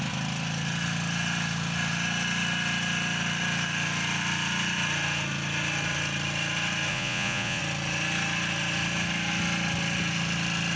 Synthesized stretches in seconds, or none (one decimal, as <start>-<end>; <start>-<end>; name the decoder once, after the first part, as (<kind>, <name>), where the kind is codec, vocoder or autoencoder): 6.9-7.6 (vocoder, Vocos)